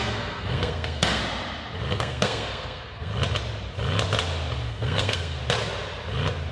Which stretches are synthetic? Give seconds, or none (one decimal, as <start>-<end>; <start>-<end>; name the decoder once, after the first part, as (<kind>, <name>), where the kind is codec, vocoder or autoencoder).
0.0-1.2 (codec, SNAC); 1.9-3.1; 4.7-5.4